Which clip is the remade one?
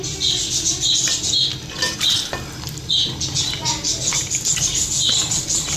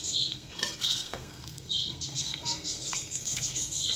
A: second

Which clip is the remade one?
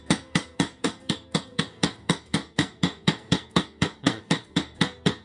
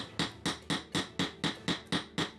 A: first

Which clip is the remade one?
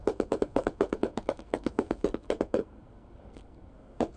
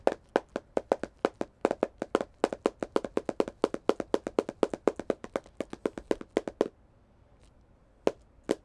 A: first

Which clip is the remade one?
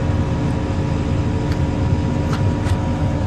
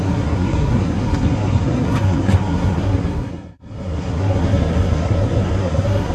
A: second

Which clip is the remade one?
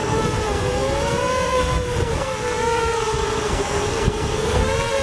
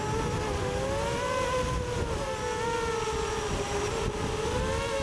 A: first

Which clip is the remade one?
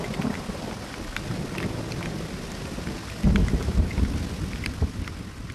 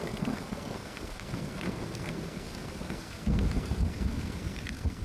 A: second